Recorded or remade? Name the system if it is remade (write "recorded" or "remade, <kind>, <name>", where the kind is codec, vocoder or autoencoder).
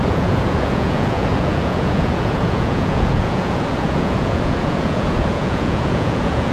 remade, vocoder, Vocos